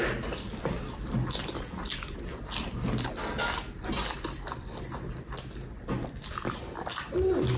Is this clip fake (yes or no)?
no